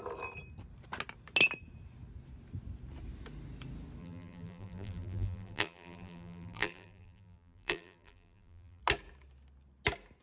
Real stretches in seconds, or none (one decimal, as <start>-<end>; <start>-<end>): 0.0-4.0; 8.8-10.2